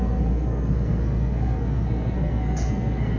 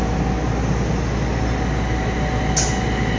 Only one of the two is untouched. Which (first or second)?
second